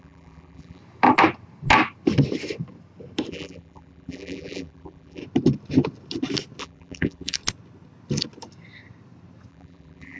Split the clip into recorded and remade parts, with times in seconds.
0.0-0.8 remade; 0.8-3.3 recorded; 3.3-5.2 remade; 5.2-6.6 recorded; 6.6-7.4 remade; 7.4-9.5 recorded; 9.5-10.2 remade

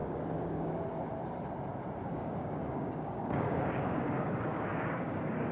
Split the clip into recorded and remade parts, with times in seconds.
0.0-0.7 remade; 0.7-2.0 recorded; 2.0-5.5 remade

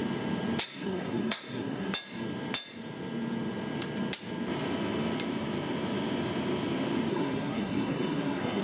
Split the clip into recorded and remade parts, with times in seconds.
0.0-0.6 recorded; 0.6-1.9 remade; 1.9-7.1 recorded; 7.1-8.6 remade